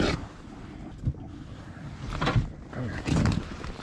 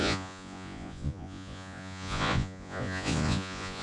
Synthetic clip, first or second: second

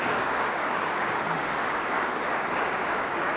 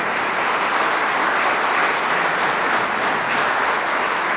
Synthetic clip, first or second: first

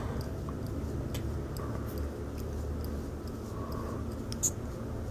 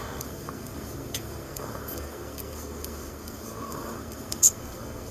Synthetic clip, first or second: second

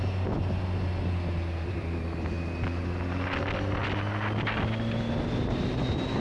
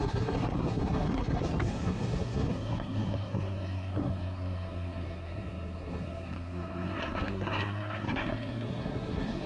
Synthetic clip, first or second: second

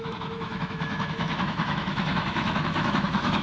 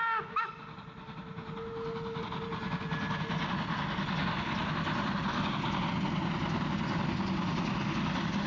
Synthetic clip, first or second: first